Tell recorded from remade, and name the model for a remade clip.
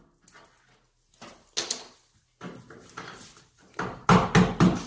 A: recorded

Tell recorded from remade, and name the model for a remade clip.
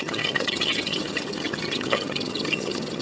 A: remade, vocoder, HiFi-GAN